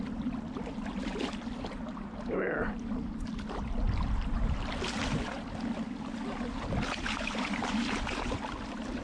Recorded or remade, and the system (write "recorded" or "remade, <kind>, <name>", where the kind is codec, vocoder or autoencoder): recorded